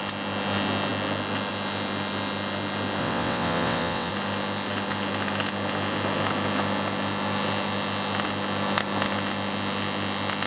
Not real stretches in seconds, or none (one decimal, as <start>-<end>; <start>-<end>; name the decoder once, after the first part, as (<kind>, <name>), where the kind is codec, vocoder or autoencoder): 3.0-4.1 (vocoder, WaveNeXt)